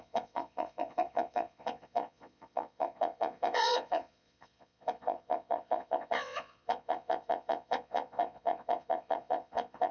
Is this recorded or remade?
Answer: remade